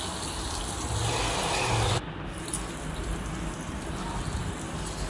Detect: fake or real real